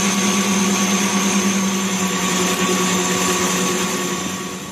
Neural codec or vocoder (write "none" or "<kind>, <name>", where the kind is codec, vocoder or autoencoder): none